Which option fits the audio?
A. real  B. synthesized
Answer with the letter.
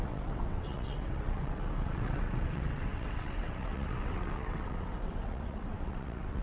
B